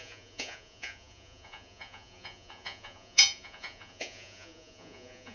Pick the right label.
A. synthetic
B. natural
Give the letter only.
A